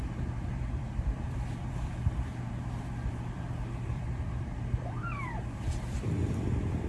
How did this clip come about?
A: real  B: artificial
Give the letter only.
B